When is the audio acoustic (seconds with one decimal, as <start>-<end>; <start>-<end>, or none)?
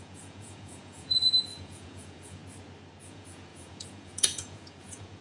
2.4-3.0